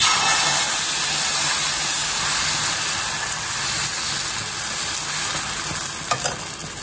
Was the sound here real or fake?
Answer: real